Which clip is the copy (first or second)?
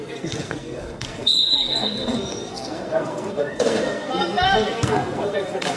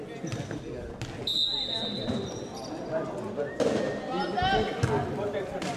first